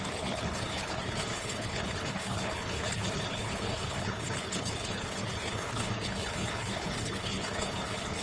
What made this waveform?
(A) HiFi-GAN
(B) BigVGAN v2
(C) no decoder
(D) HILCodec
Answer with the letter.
D